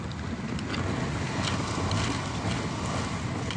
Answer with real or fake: real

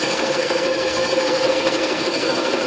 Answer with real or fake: fake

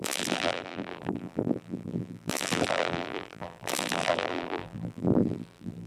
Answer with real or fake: fake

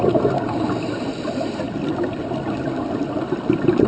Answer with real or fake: real